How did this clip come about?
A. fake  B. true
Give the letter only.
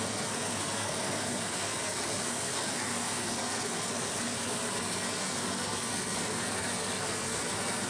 A